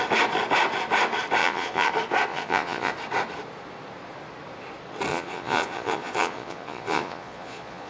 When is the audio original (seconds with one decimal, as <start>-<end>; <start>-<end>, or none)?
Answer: 0.0-1.4; 1.9-2.3; 2.9-5.1

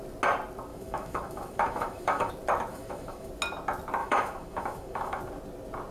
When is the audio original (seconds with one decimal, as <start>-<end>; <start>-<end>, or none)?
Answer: 0.0-0.7; 2.3-2.7; 3.3-4.0; 5.2-5.9